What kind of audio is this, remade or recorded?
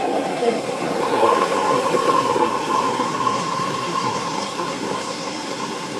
remade